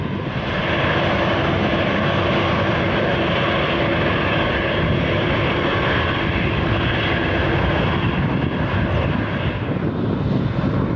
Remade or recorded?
recorded